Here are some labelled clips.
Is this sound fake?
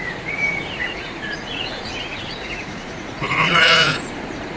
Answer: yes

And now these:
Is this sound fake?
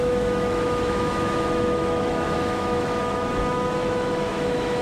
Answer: yes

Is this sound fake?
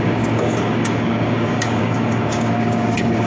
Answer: yes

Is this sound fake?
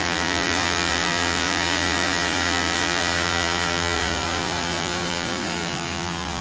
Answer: yes